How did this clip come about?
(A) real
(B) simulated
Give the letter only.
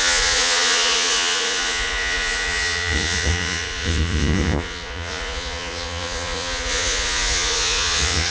B